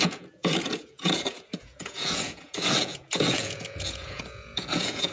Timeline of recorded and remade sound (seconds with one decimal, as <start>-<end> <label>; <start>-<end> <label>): 0.0-5.1 remade